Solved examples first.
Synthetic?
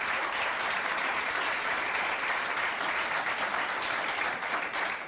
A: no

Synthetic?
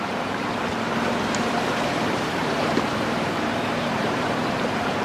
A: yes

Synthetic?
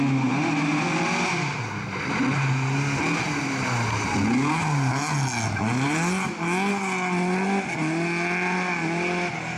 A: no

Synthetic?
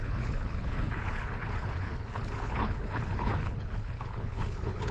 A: yes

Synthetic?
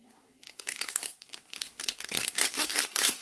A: yes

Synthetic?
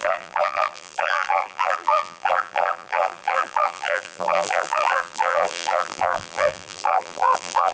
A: yes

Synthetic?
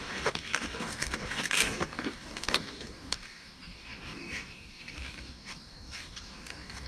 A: yes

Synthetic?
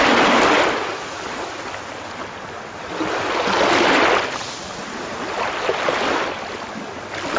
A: no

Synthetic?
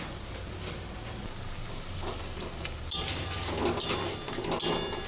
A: no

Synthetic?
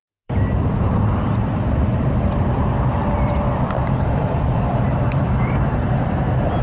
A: yes